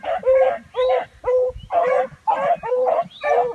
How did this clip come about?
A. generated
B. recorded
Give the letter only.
B